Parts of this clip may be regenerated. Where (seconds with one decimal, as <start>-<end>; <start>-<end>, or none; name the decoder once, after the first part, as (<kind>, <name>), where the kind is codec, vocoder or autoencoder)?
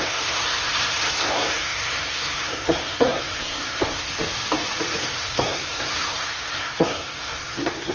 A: 0.0-4.1 (codec, SNAC); 5.0-7.9